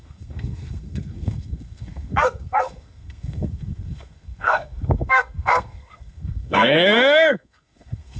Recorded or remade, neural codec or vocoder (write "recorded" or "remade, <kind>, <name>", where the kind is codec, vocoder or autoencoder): remade, codec, SNAC